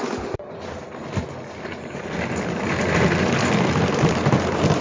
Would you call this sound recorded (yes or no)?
yes